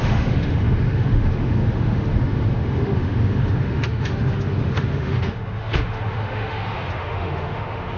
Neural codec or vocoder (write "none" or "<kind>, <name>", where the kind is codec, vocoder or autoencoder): autoencoder, DAC-VAE